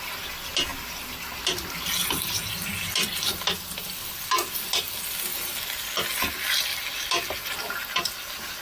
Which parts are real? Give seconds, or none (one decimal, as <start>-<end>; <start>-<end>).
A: 0.0-8.6